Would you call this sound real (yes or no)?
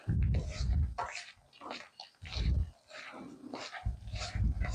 yes